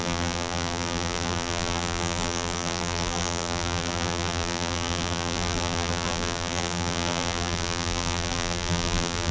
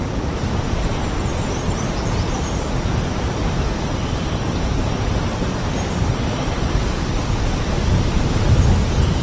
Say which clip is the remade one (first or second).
first